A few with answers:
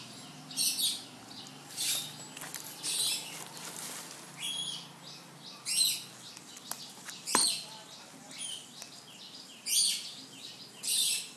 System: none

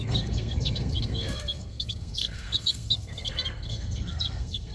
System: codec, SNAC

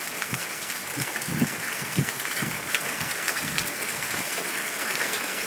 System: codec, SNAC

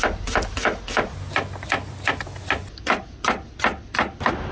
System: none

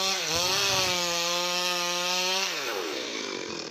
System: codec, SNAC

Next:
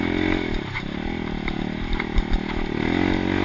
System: none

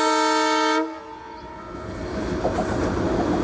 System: none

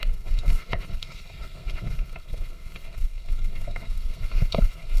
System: codec, SNAC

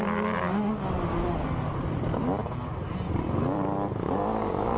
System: none